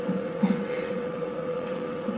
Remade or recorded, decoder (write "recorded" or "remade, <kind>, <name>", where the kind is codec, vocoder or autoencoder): remade, vocoder, WaveNeXt